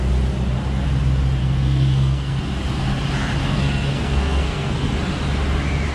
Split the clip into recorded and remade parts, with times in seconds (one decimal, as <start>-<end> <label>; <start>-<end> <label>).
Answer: 0.0-1.4 recorded; 1.4-2.4 remade; 2.4-3.4 recorded; 3.4-4.9 remade; 4.9-5.9 recorded